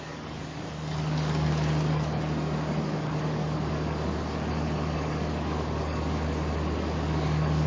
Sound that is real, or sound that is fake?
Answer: fake